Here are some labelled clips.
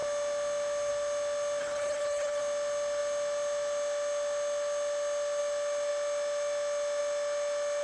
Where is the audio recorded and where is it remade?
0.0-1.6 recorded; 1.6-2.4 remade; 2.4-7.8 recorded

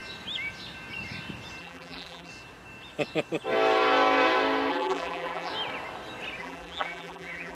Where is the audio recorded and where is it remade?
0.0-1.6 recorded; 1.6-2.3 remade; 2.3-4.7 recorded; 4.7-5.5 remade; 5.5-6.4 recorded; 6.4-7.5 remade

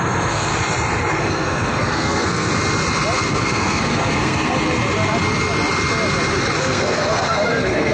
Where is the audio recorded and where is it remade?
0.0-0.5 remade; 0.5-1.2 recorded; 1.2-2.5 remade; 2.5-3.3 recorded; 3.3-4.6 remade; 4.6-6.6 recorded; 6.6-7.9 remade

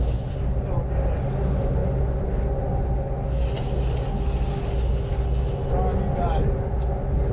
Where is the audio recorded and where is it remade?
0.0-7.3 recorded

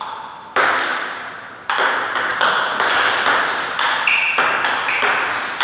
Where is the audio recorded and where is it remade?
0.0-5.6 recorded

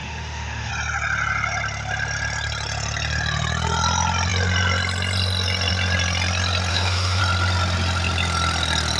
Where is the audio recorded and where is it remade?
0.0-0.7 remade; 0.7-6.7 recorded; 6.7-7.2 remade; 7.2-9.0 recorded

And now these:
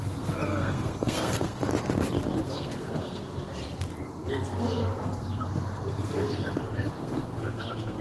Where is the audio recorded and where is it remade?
0.0-1.6 remade; 1.6-2.4 recorded; 2.4-3.5 remade; 3.5-4.0 recorded; 4.0-8.0 remade

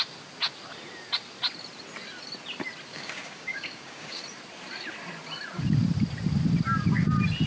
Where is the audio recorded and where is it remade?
0.0-2.9 recorded; 2.9-4.2 remade; 4.2-7.5 recorded